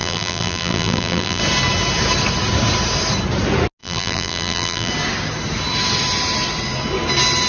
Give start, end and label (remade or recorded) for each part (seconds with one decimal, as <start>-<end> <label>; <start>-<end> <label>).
0.0-1.4 remade; 1.4-3.8 recorded; 3.8-4.9 remade; 4.9-7.5 recorded